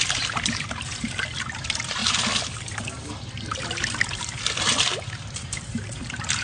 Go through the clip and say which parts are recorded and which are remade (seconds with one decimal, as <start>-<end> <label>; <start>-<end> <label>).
0.0-4.9 recorded; 4.9-6.4 remade